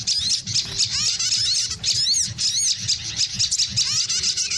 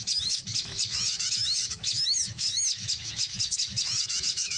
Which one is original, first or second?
first